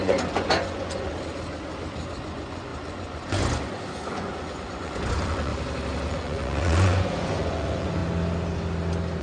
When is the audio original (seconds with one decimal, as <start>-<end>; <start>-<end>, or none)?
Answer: 1.1-2.2; 5.5-6.1; 8.0-9.2